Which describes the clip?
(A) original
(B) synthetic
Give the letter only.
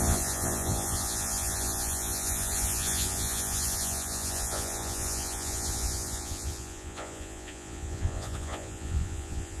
B